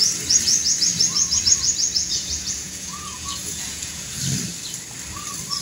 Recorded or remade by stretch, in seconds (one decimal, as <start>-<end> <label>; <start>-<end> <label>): 0.0-2.0 recorded; 2.0-4.2 remade; 4.2-5.6 recorded